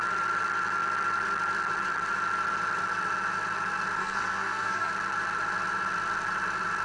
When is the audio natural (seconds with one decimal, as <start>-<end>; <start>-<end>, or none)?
0.0-4.0; 4.9-6.8